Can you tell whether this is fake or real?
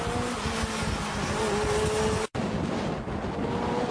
real